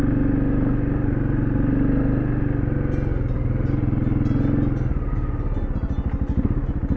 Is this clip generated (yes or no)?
no